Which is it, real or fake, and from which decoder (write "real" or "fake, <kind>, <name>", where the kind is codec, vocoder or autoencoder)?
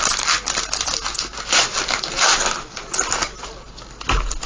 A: real